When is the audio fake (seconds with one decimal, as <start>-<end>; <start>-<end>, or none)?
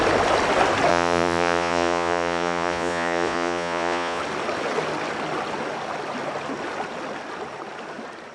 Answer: 0.9-4.2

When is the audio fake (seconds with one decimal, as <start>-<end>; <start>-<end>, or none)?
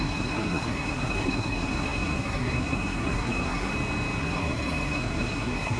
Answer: 0.0-3.7; 4.2-5.8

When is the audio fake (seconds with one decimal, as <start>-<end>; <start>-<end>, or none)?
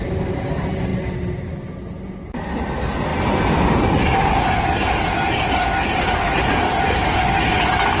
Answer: none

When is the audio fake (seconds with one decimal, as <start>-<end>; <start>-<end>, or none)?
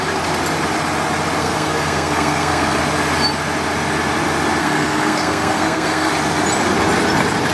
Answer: 1.4-2.8; 4.6-6.1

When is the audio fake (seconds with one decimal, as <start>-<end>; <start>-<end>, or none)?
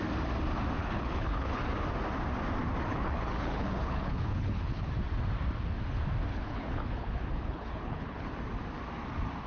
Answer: 0.8-1.6; 2.9-4.9; 6.3-8.3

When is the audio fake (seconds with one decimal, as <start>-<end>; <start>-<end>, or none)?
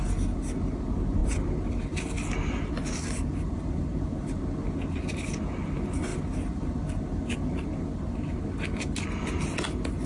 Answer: none